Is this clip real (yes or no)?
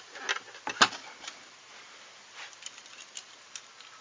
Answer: yes